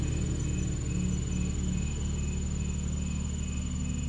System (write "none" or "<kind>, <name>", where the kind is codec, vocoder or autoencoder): none